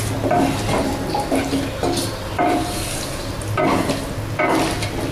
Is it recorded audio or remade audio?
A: recorded